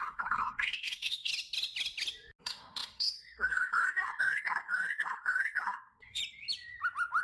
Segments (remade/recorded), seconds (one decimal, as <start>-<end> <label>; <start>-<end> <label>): 0.0-1.3 remade; 1.3-2.4 recorded; 2.4-6.2 remade; 6.2-7.2 recorded